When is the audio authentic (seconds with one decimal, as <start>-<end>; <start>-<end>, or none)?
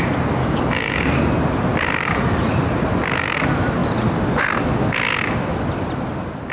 0.0-0.4; 1.3-6.5